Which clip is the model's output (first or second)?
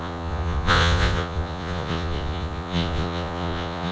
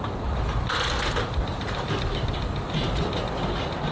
first